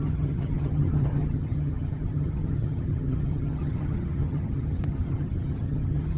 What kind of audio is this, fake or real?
fake